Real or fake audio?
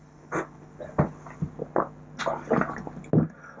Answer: real